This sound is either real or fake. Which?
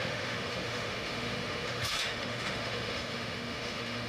fake